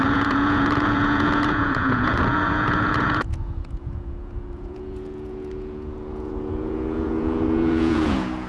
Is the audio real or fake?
fake